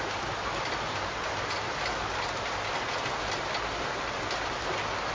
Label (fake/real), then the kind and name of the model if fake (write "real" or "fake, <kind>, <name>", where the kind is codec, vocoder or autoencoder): real